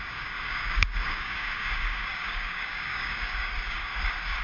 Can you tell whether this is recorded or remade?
remade